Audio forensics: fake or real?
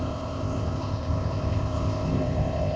fake